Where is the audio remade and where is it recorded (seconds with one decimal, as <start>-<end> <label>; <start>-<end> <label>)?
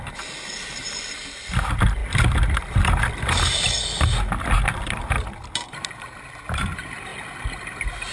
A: 0.0-8.1 recorded